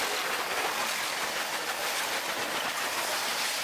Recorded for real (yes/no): no